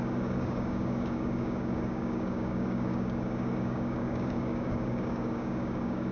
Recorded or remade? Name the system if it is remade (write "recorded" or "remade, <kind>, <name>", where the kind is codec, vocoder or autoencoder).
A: remade, codec, DAC